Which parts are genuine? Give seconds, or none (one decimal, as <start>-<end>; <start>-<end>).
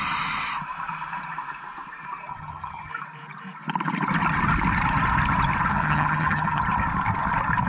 0.0-2.3; 2.9-5.7; 6.6-7.7